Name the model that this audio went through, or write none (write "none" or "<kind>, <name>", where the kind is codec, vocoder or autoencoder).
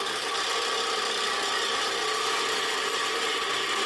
none